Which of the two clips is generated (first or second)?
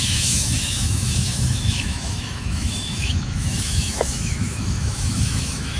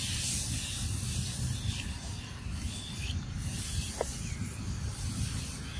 first